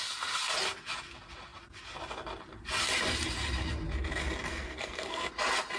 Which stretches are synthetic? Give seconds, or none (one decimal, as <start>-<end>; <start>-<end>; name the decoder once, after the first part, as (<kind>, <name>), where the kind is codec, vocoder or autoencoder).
4.5-5.3 (codec, SNAC)